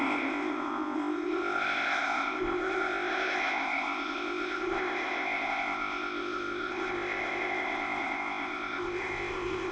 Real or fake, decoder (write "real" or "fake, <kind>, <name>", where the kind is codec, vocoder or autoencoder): fake, codec, ZipCodec